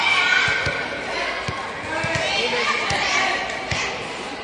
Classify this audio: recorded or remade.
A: recorded